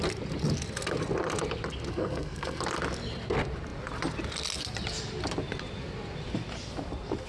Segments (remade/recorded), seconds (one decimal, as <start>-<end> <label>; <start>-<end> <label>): 0.0-1.9 recorded; 1.9-2.6 remade; 2.6-7.3 recorded